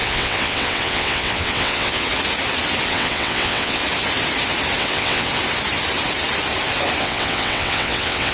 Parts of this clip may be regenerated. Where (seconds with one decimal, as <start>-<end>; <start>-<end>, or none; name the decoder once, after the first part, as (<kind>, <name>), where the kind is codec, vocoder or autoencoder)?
0.0-2.1 (vocoder, WaveNeXt); 2.9-3.8; 4.8-5.3; 7.0-8.3